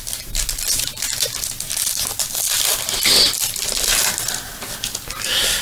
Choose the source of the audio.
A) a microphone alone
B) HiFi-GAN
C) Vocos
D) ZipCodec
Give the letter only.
A